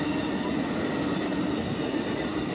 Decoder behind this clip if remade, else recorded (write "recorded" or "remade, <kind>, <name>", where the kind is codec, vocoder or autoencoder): recorded